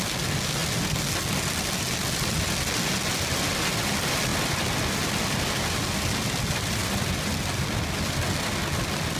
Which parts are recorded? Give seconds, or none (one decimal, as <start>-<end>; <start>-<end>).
0.0-9.2